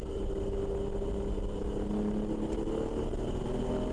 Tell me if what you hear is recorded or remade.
recorded